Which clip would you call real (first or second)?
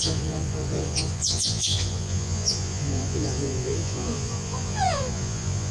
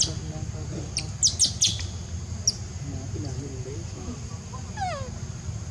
second